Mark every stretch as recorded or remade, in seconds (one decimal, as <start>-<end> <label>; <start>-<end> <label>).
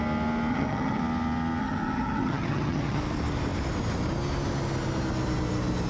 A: 0.0-0.5 recorded; 0.5-1.0 remade; 1.0-1.6 recorded; 1.6-3.0 remade; 3.0-5.9 recorded